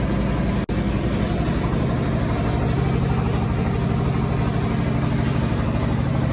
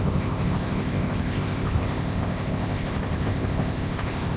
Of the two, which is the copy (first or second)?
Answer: second